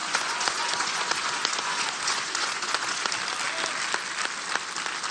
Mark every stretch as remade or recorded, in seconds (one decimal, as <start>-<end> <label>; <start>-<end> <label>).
0.0-3.1 remade; 3.1-5.1 recorded